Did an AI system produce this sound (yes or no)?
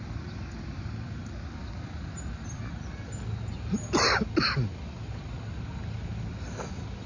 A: no